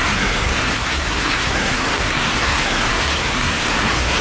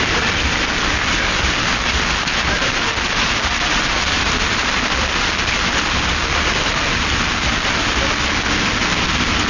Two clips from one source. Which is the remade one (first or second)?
first